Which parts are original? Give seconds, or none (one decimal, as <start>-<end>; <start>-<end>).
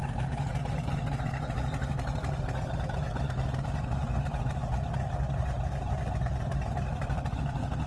3.1-5.4; 7.4-7.9